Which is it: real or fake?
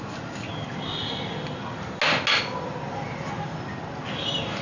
real